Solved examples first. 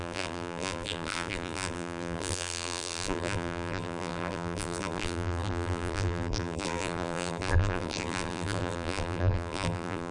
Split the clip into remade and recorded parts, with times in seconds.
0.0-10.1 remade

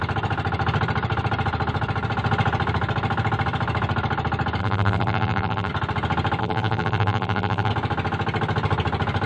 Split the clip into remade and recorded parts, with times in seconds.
0.0-4.6 recorded; 4.6-5.7 remade; 5.7-6.4 recorded; 6.4-7.7 remade; 7.7-9.3 recorded

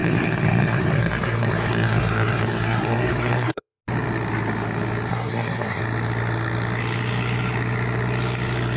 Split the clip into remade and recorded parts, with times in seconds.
0.0-3.8 remade; 3.8-5.1 recorded; 5.1-5.8 remade; 5.8-8.8 recorded

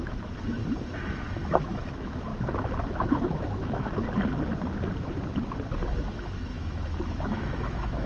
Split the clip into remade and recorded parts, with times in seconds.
0.0-0.6 remade; 0.6-1.6 recorded; 1.6-2.3 remade; 2.3-2.9 recorded; 2.9-4.0 remade; 4.0-6.1 recorded; 6.1-8.1 remade

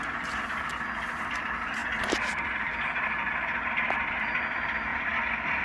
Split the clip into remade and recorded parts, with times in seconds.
0.0-5.6 recorded